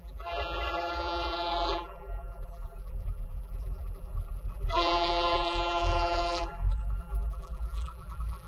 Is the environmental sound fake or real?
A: fake